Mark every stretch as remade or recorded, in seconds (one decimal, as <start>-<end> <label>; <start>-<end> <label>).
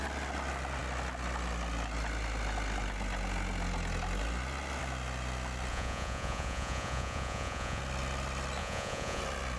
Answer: 0.0-5.7 recorded; 5.7-7.8 remade; 7.8-8.6 recorded; 8.6-9.2 remade; 9.2-9.6 recorded